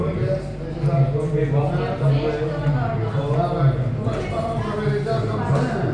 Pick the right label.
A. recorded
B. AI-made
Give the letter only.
A